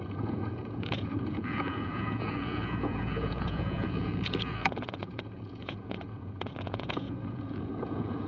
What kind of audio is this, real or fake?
fake